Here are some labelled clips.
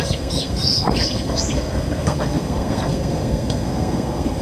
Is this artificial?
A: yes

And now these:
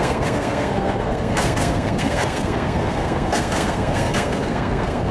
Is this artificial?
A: yes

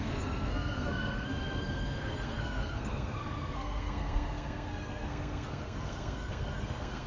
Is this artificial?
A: yes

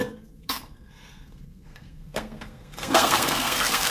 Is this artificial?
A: yes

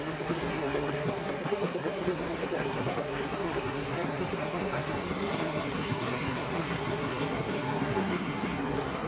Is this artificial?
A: yes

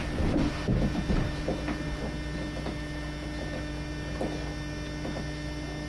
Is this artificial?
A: no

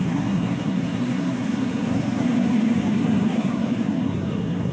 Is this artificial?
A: yes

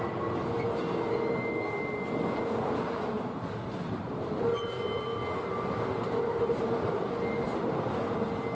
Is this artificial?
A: no